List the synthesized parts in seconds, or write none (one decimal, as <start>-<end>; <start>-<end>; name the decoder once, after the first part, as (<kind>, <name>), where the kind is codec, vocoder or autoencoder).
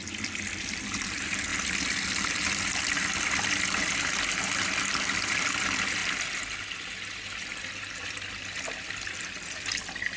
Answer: 0.7-1.5 (vocoder, BigVGAN v2); 2.5-10.2